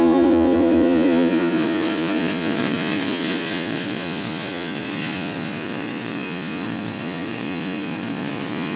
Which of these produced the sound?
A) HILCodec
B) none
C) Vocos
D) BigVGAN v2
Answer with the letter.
C